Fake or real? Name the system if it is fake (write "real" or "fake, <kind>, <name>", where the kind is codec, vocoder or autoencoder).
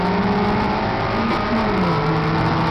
real